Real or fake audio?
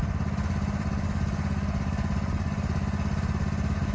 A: real